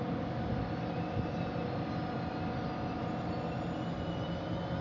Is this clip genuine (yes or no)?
yes